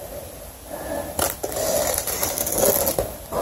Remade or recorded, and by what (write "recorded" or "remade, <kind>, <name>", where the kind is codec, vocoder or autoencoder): recorded